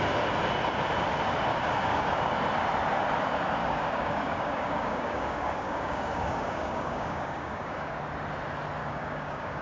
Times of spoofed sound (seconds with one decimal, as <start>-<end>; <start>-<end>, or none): 1.5-2.3; 3.6-7.9; 8.8-9.6